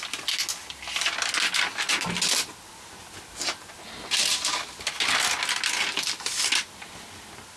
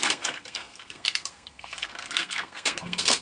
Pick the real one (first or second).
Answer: first